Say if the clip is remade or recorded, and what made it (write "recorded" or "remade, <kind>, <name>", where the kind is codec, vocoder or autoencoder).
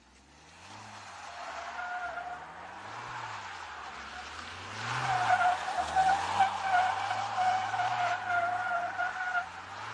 recorded